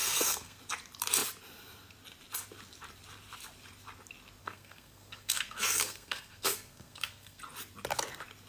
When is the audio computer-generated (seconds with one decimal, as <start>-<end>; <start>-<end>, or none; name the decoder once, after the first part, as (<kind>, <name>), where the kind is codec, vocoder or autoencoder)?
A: 0.0-0.6 (codec, SNAC); 4.4-7.4